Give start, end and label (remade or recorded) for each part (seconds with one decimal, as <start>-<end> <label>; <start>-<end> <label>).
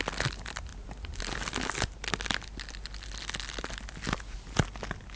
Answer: 0.0-5.2 recorded